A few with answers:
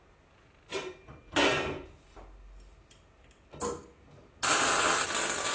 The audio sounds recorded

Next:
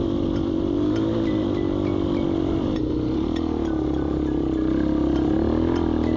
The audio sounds recorded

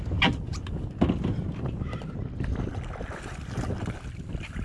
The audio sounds recorded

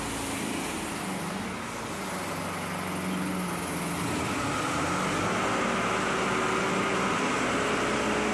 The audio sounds recorded